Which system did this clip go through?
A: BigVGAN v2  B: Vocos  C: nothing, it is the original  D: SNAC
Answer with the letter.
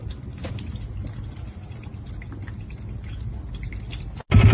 C